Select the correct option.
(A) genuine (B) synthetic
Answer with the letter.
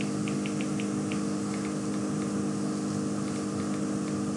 A